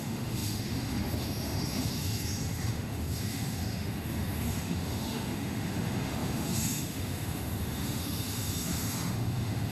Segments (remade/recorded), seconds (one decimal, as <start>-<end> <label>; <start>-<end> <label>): 0.0-9.7 remade